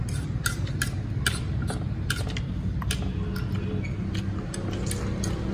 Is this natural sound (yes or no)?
yes